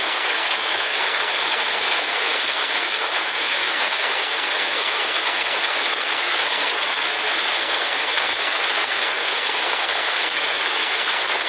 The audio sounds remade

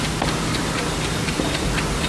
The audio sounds recorded